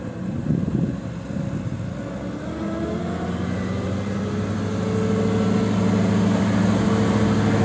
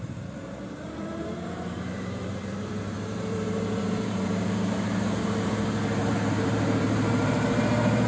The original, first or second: first